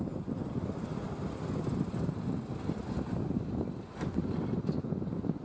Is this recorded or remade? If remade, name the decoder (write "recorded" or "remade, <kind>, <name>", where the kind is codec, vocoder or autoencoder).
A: recorded